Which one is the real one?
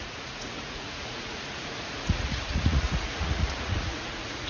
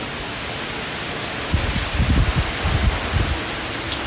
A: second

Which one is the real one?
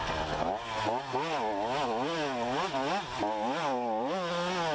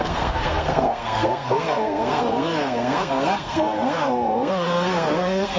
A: first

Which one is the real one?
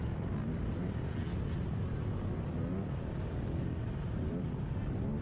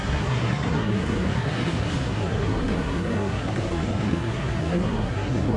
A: first